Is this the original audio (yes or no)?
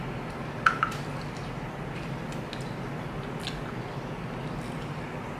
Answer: yes